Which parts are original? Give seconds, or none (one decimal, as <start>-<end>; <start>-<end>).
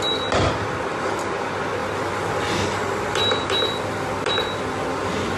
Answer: 0.0-5.4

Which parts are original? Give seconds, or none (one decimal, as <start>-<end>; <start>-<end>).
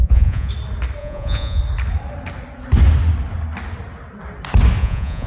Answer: 0.5-1.0; 1.6-4.8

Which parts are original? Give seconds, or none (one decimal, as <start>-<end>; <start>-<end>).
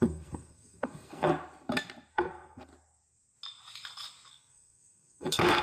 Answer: 1.3-2.1; 2.7-4.3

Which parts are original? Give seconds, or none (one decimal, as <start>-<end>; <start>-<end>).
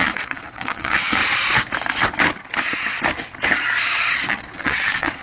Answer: 1.2-4.3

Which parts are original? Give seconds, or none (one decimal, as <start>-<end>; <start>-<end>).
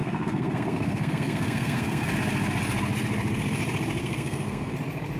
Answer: 2.1-4.0; 4.7-5.2